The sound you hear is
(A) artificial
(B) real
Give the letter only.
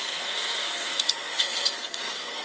A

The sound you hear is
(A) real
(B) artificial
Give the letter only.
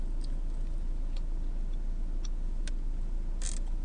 A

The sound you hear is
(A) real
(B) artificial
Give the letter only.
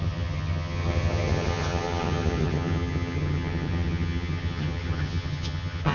B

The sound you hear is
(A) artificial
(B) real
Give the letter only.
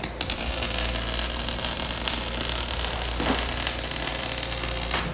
B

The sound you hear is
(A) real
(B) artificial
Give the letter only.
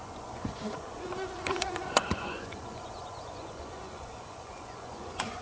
B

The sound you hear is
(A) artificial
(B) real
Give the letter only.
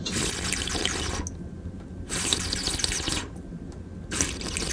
B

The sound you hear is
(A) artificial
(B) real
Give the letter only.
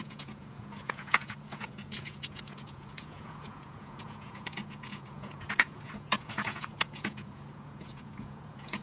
A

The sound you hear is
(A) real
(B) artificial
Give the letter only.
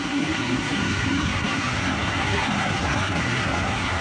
B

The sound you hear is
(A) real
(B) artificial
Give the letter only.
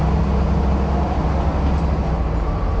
A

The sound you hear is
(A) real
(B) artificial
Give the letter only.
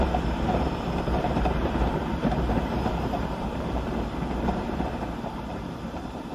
B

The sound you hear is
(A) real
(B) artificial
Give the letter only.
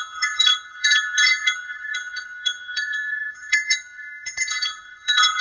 B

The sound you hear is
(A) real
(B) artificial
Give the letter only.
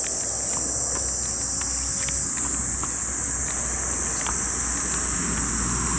A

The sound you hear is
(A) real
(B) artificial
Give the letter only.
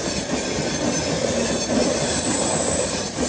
A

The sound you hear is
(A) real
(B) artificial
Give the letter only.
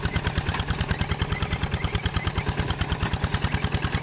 A